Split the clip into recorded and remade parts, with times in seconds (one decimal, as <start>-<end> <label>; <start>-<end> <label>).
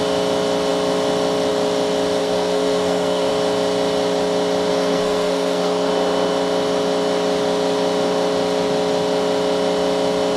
0.0-2.2 recorded; 2.2-3.3 remade; 3.3-4.7 recorded; 4.7-5.9 remade; 5.9-10.4 recorded